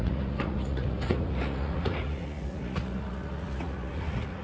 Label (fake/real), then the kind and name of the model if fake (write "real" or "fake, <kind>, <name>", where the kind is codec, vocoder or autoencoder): fake, vocoder, Vocos